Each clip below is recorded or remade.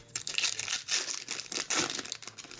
recorded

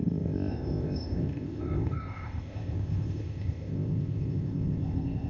remade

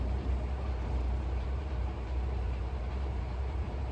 remade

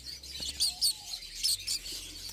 recorded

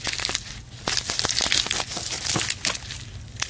recorded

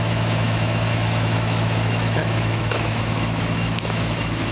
remade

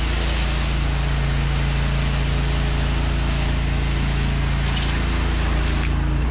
recorded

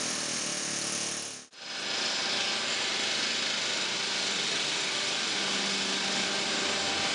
recorded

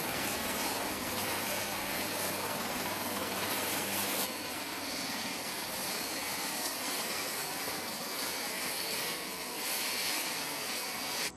remade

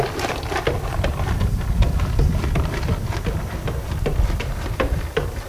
recorded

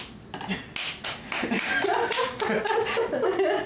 recorded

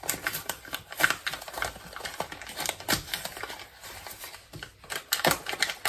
recorded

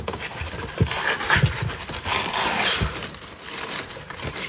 recorded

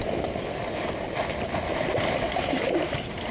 recorded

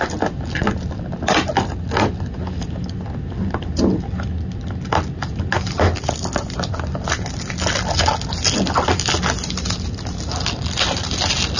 recorded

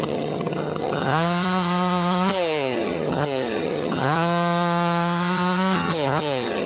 remade